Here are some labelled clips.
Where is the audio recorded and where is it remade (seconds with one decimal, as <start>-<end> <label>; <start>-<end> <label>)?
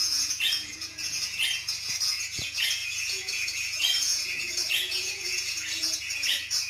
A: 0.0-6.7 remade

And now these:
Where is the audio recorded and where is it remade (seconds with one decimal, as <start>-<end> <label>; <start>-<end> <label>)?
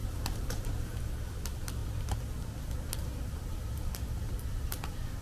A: 0.0-1.0 remade; 1.0-1.8 recorded; 1.8-2.3 remade; 2.3-3.0 recorded; 3.0-5.2 remade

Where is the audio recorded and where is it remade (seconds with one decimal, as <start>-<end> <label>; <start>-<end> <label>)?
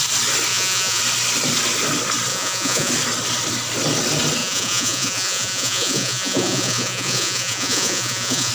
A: 0.0-0.5 recorded; 0.5-1.0 remade; 1.0-2.3 recorded; 2.3-2.9 remade; 2.9-4.4 recorded; 4.4-8.5 remade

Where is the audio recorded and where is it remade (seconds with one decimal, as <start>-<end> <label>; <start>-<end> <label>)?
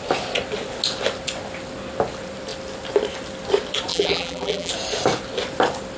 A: 0.0-3.9 recorded; 3.9-4.7 remade; 4.7-6.0 recorded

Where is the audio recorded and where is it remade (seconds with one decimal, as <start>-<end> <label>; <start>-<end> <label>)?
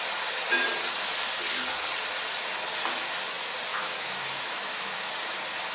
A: 0.0-3.7 recorded; 3.7-5.1 remade; 5.1-5.7 recorded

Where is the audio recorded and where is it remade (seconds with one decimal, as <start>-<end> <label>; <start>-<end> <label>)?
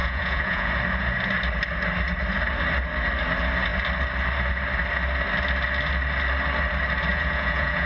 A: 0.0-0.7 remade; 0.7-7.1 recorded; 7.1-7.9 remade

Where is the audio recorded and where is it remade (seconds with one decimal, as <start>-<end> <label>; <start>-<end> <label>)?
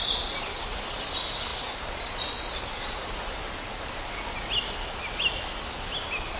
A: 0.0-6.4 recorded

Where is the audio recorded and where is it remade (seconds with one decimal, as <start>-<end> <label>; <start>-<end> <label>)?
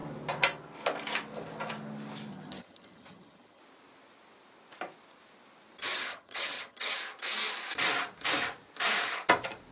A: 0.0-2.3 recorded; 2.3-3.6 remade; 3.6-6.1 recorded; 6.1-7.0 remade; 7.0-9.7 recorded